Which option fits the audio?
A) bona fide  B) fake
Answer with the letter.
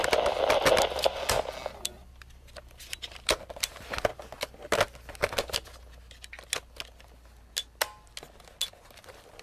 A